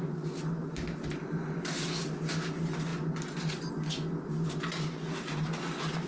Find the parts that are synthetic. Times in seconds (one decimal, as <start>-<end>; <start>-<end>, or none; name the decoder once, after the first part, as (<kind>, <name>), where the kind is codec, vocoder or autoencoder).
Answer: none